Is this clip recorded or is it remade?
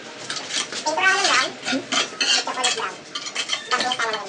recorded